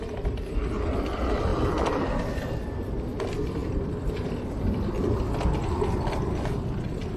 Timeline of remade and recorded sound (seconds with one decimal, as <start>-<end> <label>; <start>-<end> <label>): 0.0-7.2 recorded